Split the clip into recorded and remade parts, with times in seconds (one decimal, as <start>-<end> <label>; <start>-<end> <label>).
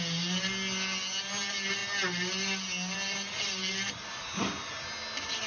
0.0-5.5 recorded